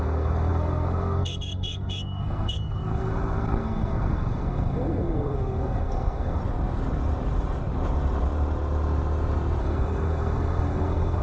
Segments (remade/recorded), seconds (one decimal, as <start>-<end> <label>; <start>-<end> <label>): 0.0-6.4 remade; 6.4-9.6 recorded; 9.6-11.2 remade